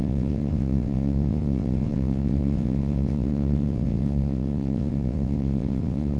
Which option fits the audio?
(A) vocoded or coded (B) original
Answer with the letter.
A